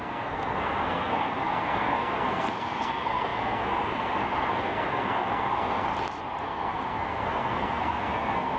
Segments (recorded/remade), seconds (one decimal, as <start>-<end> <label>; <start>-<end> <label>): 0.0-5.9 remade; 5.9-6.4 recorded; 6.4-8.6 remade